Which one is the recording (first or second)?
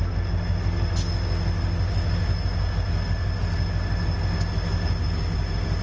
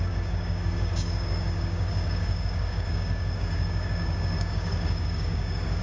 first